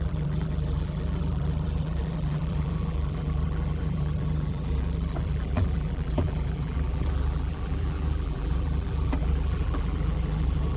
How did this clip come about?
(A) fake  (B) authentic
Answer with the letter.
A